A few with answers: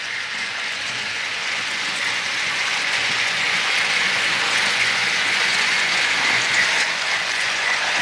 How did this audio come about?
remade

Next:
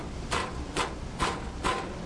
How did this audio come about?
recorded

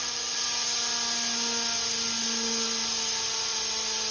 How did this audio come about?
recorded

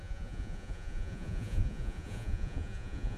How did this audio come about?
remade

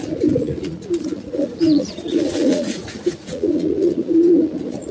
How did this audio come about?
remade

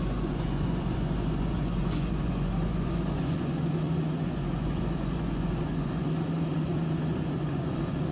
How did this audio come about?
remade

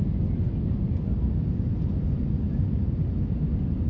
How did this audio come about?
recorded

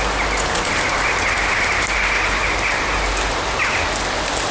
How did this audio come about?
recorded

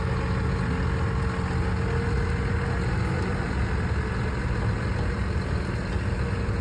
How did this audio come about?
recorded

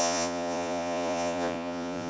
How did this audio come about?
remade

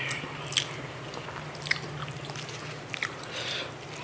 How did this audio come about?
recorded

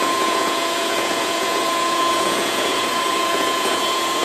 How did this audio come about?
remade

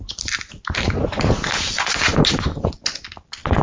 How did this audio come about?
recorded